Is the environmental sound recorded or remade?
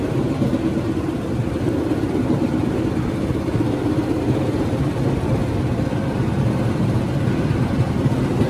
recorded